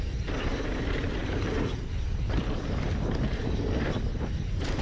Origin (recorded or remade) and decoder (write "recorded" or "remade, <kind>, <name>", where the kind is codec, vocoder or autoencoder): remade, vocoder, BigVGAN v2